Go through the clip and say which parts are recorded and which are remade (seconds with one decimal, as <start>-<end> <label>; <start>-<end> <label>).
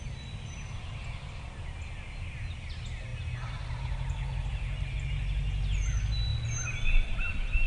0.0-7.7 recorded